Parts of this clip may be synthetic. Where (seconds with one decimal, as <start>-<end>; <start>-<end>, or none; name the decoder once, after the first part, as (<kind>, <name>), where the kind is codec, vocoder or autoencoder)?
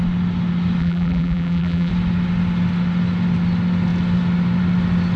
0.8-1.9 (vocoder, BigVGAN v2)